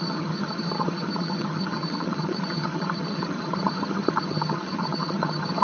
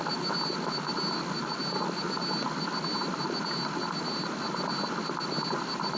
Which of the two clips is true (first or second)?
second